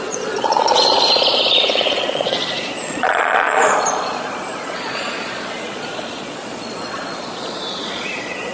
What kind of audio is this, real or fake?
fake